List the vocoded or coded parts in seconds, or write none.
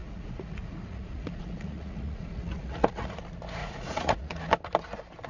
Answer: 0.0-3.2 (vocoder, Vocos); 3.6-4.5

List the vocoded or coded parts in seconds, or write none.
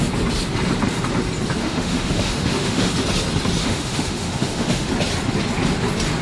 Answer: 1.6-2.9 (autoencoder, DAC-VAE); 3.6-4.9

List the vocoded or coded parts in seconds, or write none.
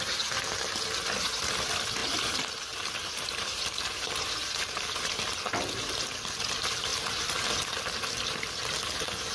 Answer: 3.0-5.1 (vocoder, BigVGAN v2); 6.9-7.5